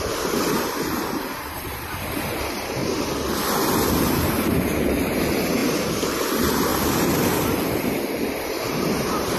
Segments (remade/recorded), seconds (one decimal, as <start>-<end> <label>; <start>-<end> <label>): 0.0-2.8 remade; 2.8-3.9 recorded; 3.9-6.7 remade; 6.7-8.4 recorded; 8.4-9.4 remade